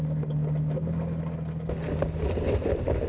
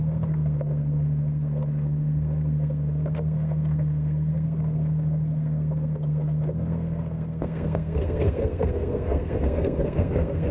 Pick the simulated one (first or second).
second